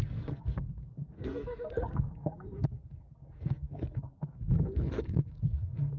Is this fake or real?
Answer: fake